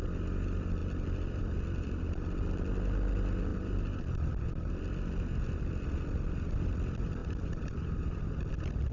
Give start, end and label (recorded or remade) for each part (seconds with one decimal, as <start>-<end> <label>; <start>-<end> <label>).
0.0-3.5 recorded; 3.5-4.7 remade; 4.7-7.2 recorded; 7.2-8.5 remade; 8.5-8.9 recorded